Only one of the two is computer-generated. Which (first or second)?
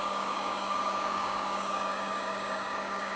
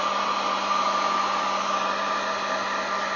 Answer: first